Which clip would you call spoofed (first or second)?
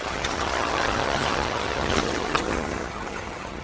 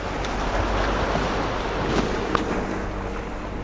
first